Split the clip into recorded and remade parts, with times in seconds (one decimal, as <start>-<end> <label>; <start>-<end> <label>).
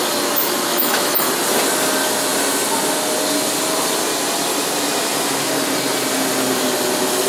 0.0-0.7 recorded; 0.7-1.3 remade; 1.3-7.3 recorded